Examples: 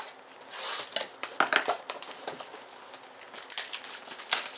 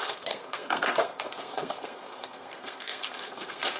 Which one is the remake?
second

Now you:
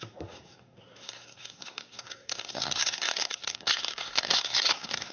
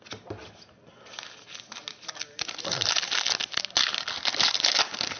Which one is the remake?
first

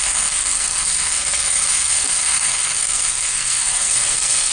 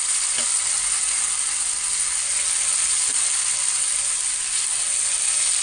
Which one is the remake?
first